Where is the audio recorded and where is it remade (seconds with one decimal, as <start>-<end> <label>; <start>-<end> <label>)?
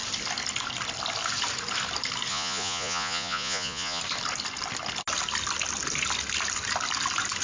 0.0-2.3 recorded; 2.3-4.0 remade; 4.0-7.4 recorded